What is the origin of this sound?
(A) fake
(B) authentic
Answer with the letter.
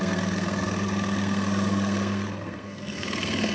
A